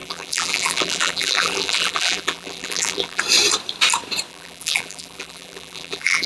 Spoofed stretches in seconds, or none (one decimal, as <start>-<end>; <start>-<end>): 0.0-3.2; 4.3-6.3